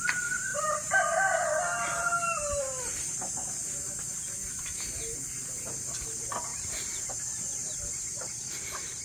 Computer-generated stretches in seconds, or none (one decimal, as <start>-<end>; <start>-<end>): 0.5-2.8; 6.5-7.1